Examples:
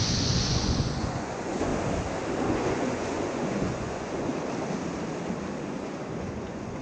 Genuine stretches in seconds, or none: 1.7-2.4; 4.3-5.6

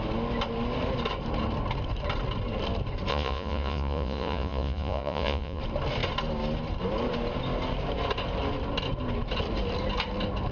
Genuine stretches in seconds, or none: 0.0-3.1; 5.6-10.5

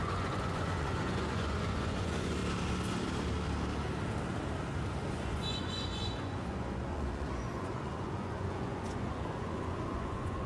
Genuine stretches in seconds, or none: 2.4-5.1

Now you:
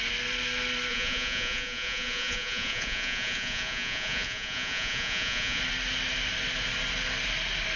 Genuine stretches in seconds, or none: 0.0-0.9; 5.6-7.8

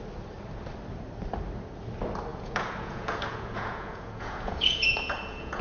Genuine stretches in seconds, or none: 0.0-2.3

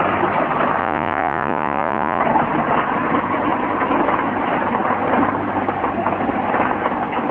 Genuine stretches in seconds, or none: 0.0-0.8; 2.2-7.3

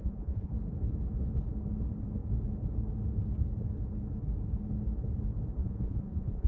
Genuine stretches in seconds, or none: 0.5-5.6